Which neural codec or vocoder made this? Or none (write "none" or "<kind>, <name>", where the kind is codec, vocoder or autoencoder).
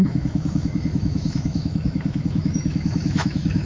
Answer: autoencoder, DAC-VAE